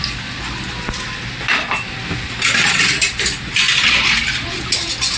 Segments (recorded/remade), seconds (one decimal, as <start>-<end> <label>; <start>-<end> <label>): 0.0-3.1 remade; 3.1-5.2 recorded

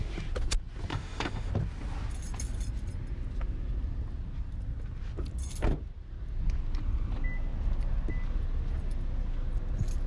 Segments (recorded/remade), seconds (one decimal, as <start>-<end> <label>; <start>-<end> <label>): 0.0-0.9 recorded; 0.9-1.5 remade; 1.5-10.1 recorded